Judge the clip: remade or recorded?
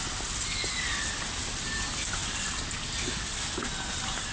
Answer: recorded